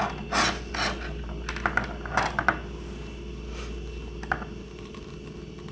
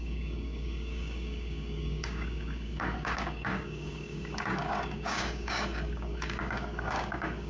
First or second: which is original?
first